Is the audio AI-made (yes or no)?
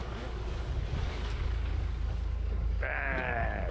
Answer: yes